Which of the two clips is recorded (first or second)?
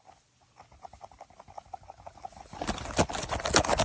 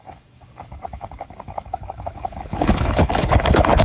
first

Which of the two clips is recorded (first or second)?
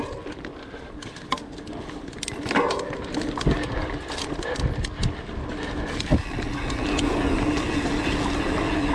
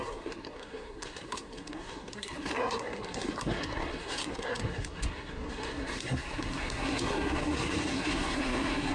first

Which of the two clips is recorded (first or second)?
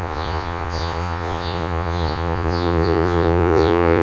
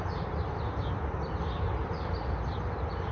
second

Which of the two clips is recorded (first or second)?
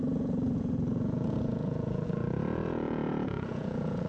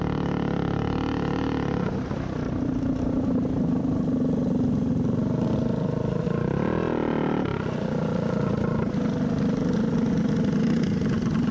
second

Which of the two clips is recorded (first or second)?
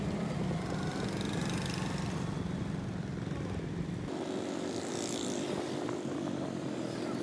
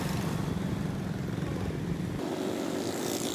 first